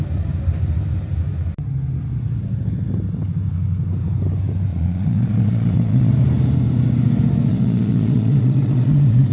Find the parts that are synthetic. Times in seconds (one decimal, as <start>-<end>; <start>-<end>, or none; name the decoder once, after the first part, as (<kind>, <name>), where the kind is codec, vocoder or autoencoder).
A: 4.7-6.1 (vocoder, Vocos); 7.5-9.3